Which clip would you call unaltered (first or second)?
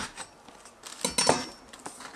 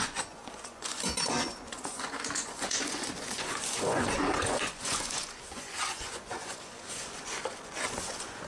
first